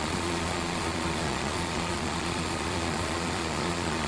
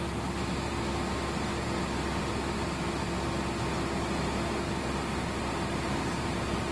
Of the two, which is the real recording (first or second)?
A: second